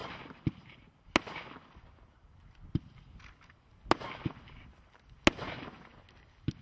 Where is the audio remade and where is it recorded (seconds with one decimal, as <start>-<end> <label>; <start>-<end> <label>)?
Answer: 0.0-6.6 recorded